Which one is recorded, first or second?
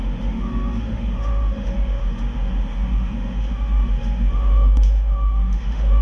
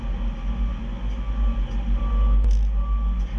second